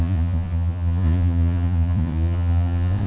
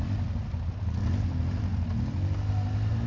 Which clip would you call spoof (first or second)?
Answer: first